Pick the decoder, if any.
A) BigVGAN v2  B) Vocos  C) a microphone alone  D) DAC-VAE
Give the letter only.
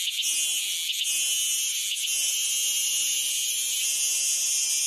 C